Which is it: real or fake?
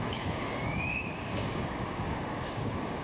fake